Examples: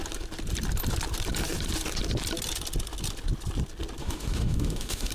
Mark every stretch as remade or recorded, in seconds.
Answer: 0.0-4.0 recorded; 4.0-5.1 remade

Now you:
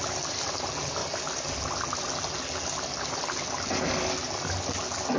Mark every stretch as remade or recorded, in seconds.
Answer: 0.0-5.2 recorded